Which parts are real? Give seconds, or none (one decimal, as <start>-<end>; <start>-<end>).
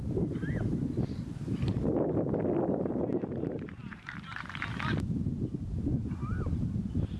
0.0-3.8; 4.4-6.2